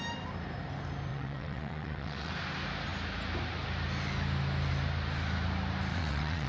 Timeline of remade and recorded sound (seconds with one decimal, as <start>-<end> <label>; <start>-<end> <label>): 0.0-1.1 recorded; 1.1-2.3 remade; 2.3-5.9 recorded; 5.9-6.5 remade